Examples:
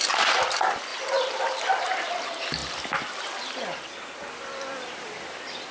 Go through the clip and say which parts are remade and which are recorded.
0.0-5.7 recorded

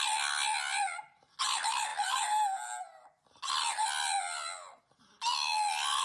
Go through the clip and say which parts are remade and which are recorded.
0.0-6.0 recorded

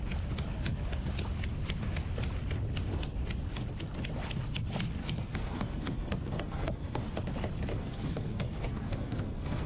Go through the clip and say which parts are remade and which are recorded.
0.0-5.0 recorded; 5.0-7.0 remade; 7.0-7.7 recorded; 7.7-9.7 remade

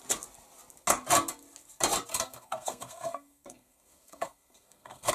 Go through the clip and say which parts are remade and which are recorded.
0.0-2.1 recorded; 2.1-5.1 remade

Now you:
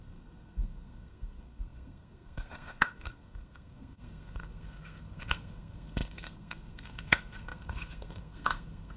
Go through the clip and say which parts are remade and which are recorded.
0.0-9.0 remade

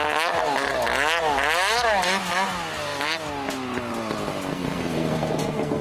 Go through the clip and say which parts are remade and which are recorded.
0.0-4.5 recorded; 4.5-5.8 remade

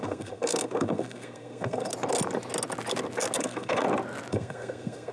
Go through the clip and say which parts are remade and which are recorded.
0.0-1.9 remade; 1.9-3.4 recorded; 3.4-3.8 remade; 3.8-4.3 recorded; 4.3-5.1 remade